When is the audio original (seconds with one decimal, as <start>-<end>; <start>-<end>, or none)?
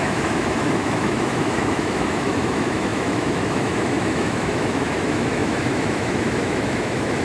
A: none